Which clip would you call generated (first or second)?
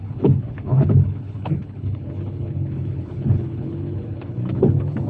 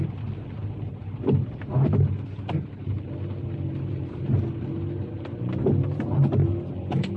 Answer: first